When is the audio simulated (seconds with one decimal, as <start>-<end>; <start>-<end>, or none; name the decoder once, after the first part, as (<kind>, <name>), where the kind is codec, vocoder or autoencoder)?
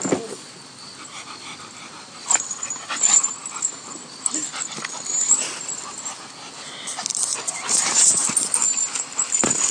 none